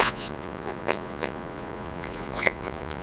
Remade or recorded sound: remade